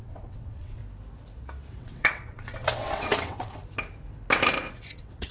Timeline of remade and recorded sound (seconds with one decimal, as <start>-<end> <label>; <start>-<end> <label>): 0.0-0.8 remade; 0.8-1.7 recorded; 1.7-3.6 remade; 3.6-4.7 recorded; 4.7-5.3 remade